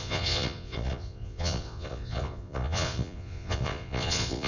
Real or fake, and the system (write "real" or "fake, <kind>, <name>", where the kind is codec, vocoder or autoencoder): fake, vocoder, Vocos